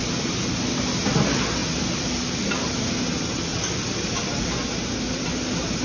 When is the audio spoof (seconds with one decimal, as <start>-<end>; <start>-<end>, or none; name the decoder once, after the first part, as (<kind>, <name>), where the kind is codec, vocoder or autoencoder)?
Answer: 1.6-2.5 (vocoder, BigVGAN v2)